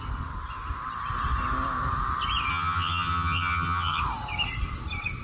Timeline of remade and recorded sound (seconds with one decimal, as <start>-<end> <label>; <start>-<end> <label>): 0.0-2.5 recorded; 2.5-4.0 remade; 4.0-5.2 recorded